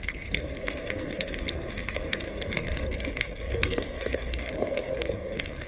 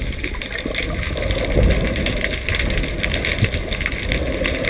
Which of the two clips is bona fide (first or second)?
second